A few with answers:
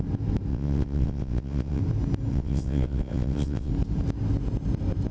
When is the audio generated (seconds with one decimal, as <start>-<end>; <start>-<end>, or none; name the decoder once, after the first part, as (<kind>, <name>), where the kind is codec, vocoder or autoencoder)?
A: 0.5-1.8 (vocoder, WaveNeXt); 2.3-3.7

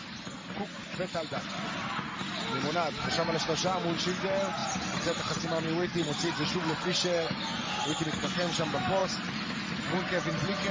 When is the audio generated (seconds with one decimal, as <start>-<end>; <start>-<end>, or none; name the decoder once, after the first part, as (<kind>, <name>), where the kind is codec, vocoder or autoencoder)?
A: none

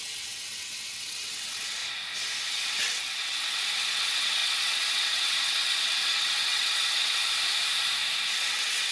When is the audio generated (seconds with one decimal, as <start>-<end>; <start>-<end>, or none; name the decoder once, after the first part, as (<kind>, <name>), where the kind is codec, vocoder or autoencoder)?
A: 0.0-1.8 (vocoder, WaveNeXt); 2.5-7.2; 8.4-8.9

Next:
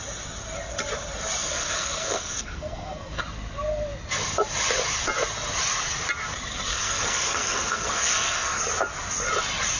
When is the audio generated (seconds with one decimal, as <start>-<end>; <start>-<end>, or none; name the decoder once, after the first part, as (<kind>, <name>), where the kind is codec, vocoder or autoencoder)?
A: 1.4-3.2 (codec, SNAC); 6.7-8.6

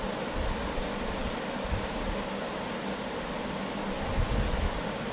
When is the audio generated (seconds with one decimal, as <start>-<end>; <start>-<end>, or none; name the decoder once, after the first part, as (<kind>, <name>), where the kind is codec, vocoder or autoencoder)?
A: none

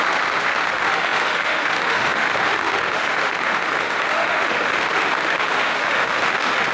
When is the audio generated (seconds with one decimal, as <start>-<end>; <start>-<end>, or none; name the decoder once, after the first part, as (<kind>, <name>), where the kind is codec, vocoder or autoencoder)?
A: 0.0-6.7 (autoencoder, DAC-VAE)

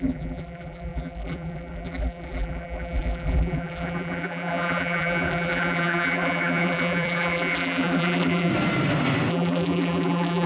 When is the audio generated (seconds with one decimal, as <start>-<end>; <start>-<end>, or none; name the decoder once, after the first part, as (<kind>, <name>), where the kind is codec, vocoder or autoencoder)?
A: 0.0-8.5 (vocoder, BigVGAN v2); 9.3-10.5